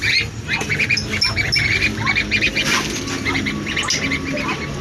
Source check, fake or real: real